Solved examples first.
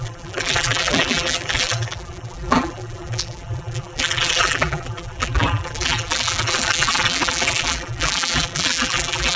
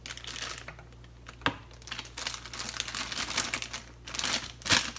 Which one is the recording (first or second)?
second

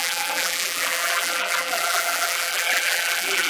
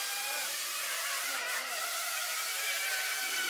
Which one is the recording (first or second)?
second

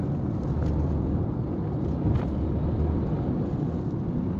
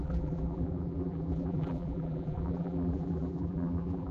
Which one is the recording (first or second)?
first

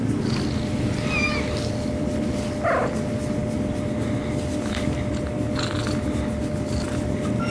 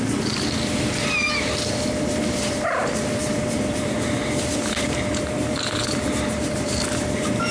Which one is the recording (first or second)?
first